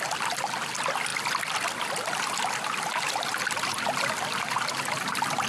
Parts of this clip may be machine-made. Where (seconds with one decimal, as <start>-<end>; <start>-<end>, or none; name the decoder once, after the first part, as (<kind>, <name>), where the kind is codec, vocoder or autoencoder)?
none